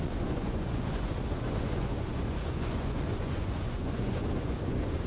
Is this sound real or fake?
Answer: fake